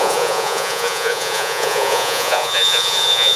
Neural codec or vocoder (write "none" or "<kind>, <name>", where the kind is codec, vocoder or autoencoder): vocoder, Vocos